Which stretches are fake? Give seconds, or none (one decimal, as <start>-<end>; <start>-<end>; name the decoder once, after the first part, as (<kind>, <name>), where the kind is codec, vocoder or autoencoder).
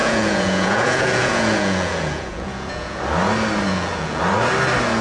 0.0-3.0 (vocoder, Vocos); 3.7-4.2